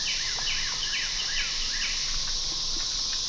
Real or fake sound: real